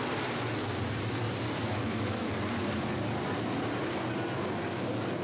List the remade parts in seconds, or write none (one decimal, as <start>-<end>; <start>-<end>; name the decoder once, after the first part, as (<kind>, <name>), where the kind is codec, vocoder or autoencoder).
1.6-2.3 (autoencoder, DAC-VAE)